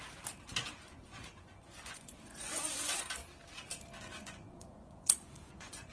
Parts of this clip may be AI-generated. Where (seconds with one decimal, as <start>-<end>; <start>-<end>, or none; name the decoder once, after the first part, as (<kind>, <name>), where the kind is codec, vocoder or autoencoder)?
1.1-3.1 (vocoder, Vocos); 4.0-5.9